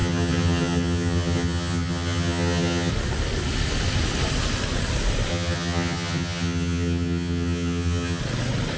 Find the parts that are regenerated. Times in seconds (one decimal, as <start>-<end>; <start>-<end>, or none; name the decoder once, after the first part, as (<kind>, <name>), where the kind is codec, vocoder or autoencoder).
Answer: 0.0-2.9 (vocoder, HiFi-GAN); 5.3-8.2